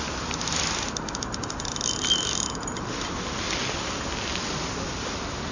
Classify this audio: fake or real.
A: real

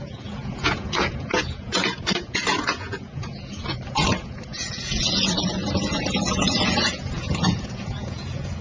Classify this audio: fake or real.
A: fake